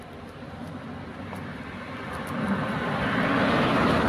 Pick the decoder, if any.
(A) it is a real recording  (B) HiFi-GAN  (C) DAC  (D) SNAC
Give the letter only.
A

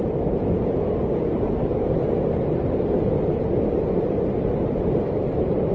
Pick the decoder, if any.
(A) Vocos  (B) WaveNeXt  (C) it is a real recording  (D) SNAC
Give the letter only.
C